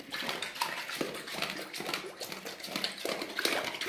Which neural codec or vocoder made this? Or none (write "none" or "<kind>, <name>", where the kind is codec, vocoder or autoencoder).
none